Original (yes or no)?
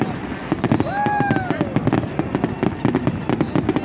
yes